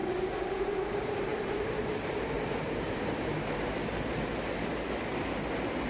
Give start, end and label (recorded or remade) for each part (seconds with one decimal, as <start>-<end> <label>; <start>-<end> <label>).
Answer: 0.0-5.9 recorded